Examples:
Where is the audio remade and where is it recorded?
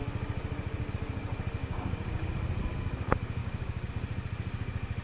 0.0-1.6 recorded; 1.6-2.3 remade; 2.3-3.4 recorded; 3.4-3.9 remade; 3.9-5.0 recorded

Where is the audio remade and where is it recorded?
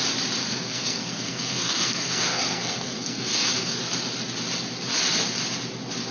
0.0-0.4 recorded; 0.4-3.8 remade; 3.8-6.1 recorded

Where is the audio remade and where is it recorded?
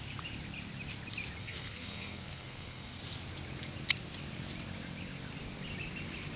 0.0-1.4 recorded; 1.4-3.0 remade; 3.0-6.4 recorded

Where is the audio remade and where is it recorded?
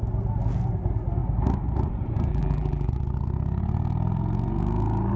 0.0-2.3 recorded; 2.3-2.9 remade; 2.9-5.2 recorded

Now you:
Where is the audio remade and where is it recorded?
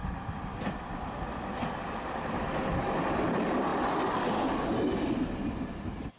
0.0-6.2 recorded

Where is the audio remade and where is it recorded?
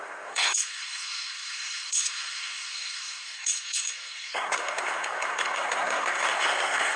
0.0-7.0 remade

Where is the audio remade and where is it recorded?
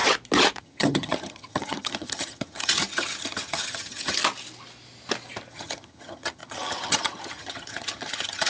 0.0-0.6 recorded; 0.6-4.2 remade; 4.2-5.5 recorded; 5.5-8.5 remade